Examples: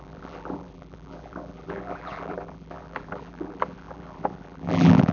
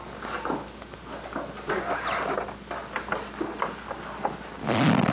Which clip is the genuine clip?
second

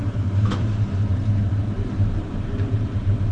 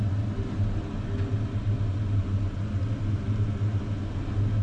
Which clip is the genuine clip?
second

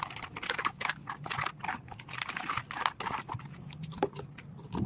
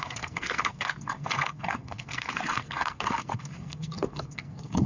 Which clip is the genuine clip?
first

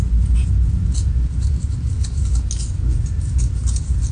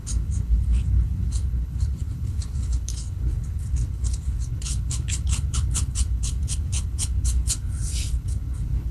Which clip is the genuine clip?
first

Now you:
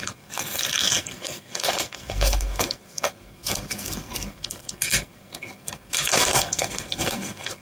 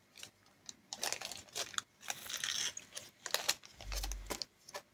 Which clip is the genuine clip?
second